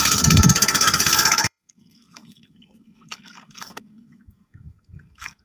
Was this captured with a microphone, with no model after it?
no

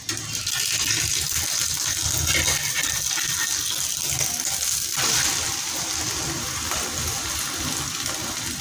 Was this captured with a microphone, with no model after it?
yes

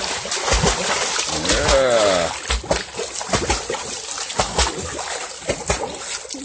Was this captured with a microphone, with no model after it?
yes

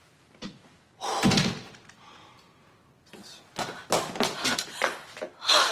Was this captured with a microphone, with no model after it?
yes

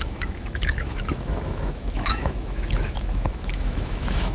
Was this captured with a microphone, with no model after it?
no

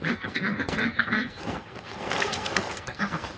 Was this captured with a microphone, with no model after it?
no